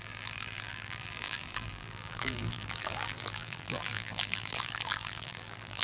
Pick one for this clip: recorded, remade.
remade